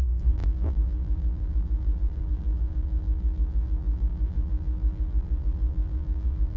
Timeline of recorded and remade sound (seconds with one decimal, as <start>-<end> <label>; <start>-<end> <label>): 0.0-6.6 remade